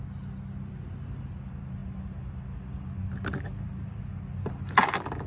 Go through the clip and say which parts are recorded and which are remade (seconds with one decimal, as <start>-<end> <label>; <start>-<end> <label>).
0.0-5.3 recorded